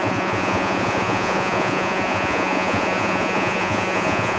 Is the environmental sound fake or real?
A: fake